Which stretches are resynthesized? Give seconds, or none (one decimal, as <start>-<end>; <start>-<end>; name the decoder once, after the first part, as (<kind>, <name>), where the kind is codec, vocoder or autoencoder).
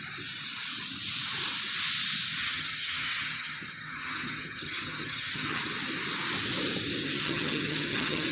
2.4-5.6 (vocoder, HiFi-GAN); 7.0-8.3